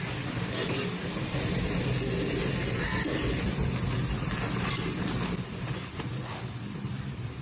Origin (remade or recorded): recorded